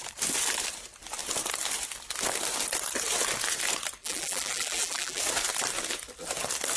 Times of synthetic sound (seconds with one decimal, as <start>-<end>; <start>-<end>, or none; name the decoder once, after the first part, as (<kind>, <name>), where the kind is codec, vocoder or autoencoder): 4.0-5.2 (vocoder, BigVGAN v2)